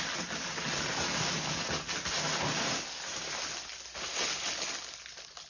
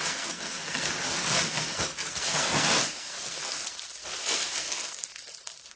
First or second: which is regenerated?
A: second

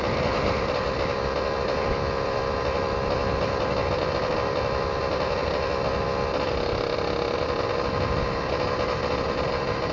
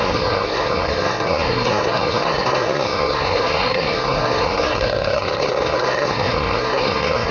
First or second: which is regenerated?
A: second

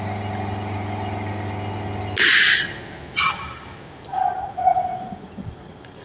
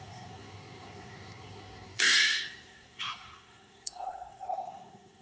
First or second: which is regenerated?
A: second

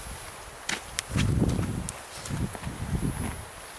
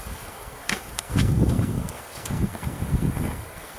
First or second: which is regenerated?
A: second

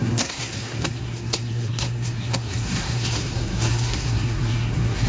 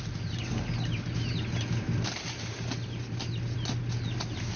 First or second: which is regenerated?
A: first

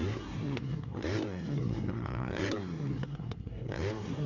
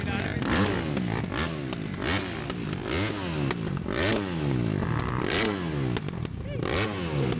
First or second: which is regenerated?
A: first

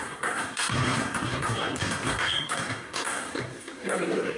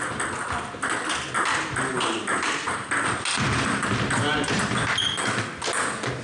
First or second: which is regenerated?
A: first